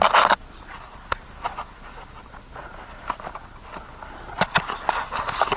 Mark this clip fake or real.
real